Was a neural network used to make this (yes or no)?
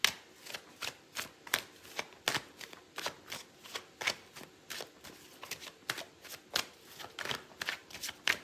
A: no